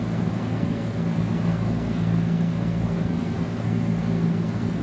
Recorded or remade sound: remade